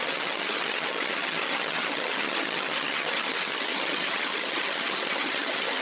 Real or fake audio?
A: fake